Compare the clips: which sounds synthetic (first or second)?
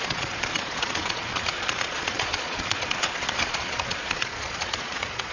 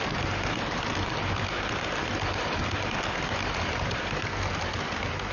first